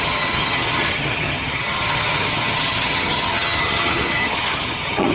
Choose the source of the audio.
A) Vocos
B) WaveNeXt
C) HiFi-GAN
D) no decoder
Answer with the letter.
C